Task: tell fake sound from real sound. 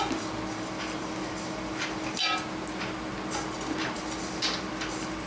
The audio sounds real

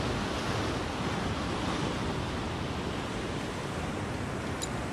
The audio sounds real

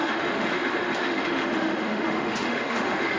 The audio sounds fake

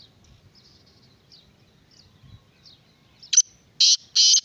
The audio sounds real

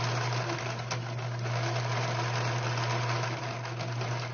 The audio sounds real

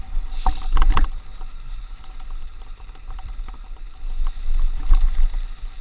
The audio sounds real